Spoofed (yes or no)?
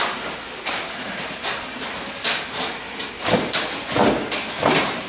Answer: no